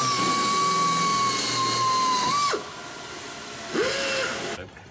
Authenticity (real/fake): real